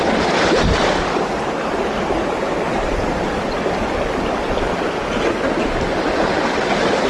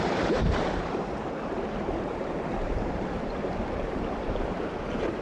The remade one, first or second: second